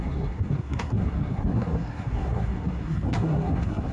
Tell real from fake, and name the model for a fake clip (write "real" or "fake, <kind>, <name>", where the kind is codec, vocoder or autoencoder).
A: fake, codec, SNAC